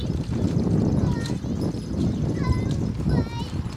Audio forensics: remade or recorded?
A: recorded